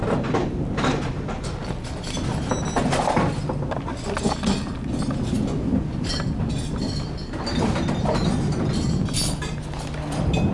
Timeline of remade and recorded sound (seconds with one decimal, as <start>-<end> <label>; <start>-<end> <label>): 0.0-10.5 recorded